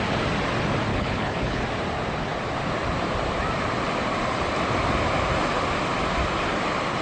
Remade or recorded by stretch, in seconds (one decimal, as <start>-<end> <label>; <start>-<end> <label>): 0.0-0.9 recorded; 0.9-1.6 remade; 1.6-7.0 recorded